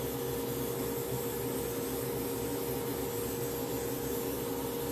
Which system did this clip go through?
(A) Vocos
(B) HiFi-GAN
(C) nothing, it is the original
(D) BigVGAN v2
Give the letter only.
C